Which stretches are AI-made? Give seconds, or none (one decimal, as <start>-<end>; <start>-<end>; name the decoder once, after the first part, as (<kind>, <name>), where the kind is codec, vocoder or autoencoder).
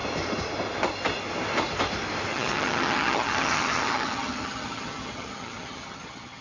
2.3-6.4 (vocoder, HiFi-GAN)